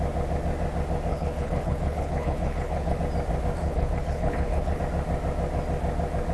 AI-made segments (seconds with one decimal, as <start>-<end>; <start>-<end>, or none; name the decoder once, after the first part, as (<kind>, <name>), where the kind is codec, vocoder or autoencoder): 1.1-3.0 (codec, HILCodec); 3.6-4.8

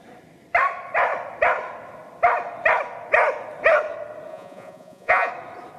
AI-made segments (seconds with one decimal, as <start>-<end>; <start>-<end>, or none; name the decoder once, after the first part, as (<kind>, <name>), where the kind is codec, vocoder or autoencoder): 4.3-5.3 (vocoder, Vocos)

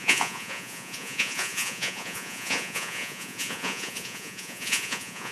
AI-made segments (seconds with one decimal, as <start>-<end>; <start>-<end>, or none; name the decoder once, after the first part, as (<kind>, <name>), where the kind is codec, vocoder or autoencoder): 0.0-5.3 (vocoder, Vocos)

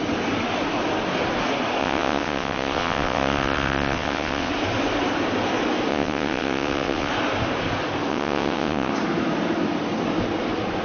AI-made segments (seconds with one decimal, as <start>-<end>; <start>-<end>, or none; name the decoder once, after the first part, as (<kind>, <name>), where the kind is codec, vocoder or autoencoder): 1.8-4.5 (vocoder, WaveNeXt); 5.9-7.1; 8.1-8.9

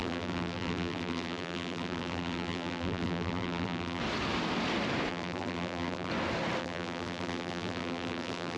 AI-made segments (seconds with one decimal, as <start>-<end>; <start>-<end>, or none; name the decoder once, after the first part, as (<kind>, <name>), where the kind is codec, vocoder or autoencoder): 0.0-4.0 (vocoder, BigVGAN v2); 5.1-6.1; 6.6-8.6